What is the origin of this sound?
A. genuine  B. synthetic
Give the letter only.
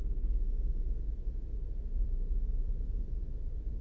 A